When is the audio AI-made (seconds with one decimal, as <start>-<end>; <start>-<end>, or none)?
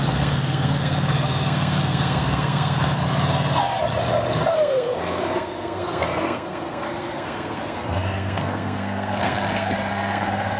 0.0-3.0; 4.5-10.6